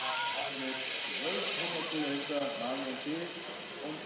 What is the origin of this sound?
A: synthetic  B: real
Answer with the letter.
B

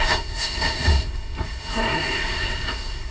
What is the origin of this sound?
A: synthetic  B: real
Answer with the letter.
A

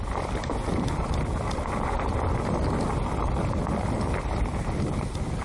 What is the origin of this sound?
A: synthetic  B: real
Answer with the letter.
B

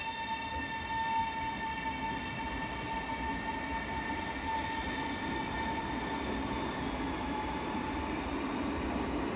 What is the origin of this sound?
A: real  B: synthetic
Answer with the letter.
A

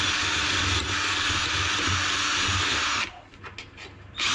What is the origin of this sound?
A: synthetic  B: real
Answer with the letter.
B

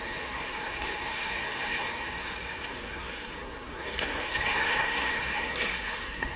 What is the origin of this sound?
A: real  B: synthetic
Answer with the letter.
B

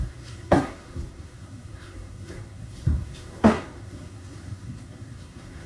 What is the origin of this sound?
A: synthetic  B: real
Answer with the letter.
A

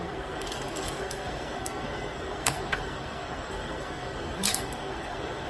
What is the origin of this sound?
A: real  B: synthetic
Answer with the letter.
B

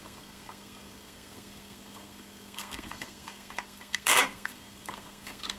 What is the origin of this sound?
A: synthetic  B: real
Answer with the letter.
A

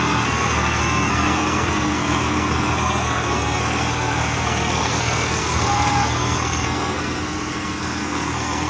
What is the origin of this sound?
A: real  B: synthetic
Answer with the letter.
B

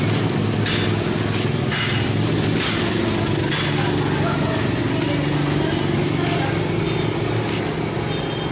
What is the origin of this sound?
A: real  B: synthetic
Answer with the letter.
A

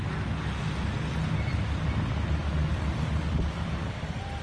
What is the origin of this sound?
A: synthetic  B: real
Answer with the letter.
B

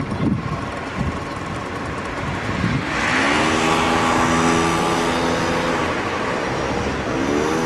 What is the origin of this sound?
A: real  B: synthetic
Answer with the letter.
A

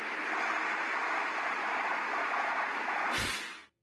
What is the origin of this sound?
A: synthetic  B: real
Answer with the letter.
B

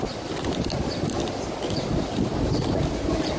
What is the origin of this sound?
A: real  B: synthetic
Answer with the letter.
A